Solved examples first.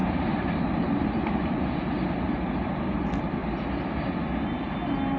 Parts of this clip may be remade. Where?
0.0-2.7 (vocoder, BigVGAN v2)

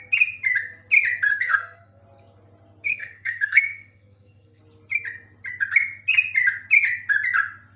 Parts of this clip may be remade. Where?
1.3-2.0 (codec, SNAC); 2.9-4.6

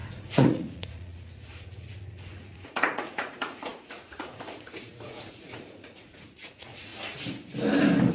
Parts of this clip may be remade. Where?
0.0-6.9 (vocoder, Vocos)

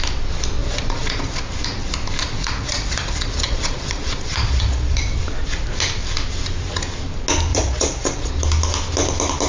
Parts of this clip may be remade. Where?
0.6-1.4 (vocoder, Vocos); 2.2-5.2; 7.5-8.3

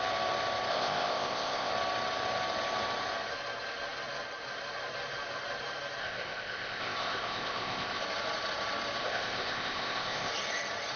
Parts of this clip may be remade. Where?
0.7-1.7 (codec, ZipCodec); 6.0-8.0; 9.0-10.3

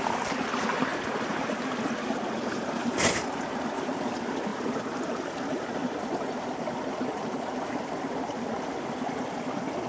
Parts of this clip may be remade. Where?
0.9-1.9 (vocoder, BigVGAN v2); 2.8-3.3